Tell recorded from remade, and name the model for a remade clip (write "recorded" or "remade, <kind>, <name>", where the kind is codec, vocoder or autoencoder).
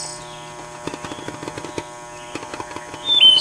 recorded